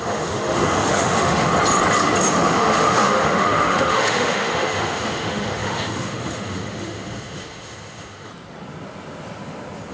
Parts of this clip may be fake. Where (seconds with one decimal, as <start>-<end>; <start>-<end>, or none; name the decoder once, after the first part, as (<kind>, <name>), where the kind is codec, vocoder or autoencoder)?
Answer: 0.0-1.5 (autoencoder, DAC-VAE); 2.3-8.3